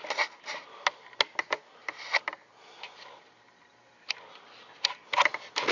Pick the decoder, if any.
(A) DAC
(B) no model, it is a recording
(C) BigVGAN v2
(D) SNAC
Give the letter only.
B